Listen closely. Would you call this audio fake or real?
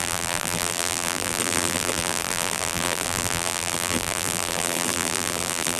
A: fake